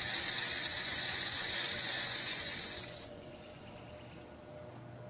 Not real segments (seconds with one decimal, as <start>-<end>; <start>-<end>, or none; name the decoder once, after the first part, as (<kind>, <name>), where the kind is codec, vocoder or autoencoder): 0.7-3.8 (vocoder, Vocos)